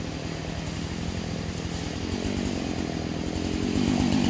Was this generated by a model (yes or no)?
no